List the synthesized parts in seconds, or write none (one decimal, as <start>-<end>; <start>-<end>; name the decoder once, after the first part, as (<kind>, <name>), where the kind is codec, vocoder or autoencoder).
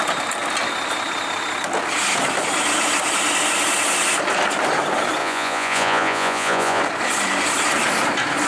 5.2-6.8 (vocoder, Vocos)